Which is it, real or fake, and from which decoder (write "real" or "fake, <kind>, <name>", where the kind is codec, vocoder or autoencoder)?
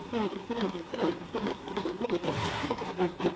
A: fake, codec, SNAC